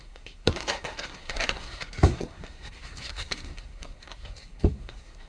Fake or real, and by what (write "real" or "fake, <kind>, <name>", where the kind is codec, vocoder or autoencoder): fake, codec, SNAC